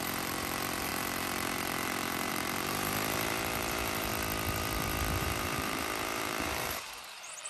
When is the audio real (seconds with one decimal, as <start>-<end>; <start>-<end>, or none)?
4.1-5.2